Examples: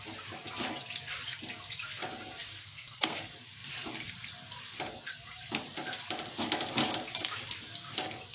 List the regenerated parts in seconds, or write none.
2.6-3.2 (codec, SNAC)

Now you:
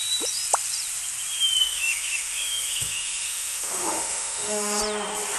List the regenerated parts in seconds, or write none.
1.6-4.8 (autoencoder, DAC-VAE)

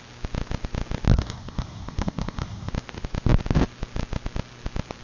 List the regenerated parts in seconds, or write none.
1.1-2.7 (codec, SNAC)

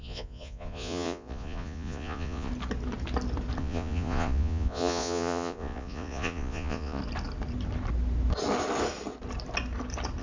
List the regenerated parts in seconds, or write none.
0.0-2.5 (vocoder, Vocos); 3.6-7.0

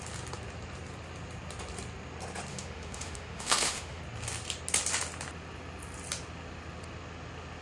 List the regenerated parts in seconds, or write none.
2.5-4.0 (autoencoder, DAC-VAE)

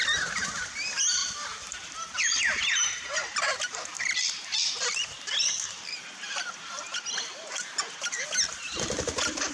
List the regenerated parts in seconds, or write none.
1.2-4.3 (vocoder, BigVGAN v2)